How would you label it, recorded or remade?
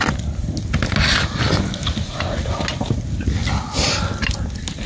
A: recorded